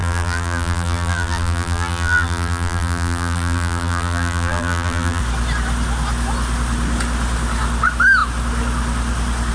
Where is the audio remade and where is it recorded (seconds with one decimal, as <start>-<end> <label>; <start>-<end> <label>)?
0.0-5.2 remade; 5.2-9.5 recorded